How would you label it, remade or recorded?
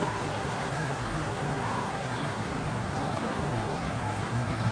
remade